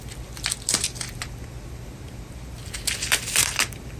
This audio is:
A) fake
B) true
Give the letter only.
B